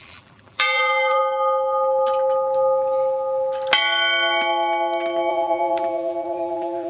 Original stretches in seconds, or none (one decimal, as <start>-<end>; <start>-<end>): 1.2-5.3